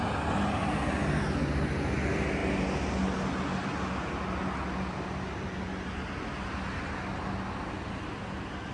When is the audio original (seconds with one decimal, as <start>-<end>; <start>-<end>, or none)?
0.0-8.7